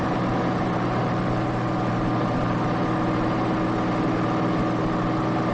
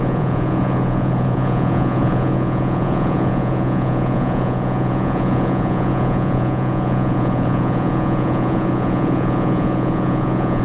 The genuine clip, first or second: first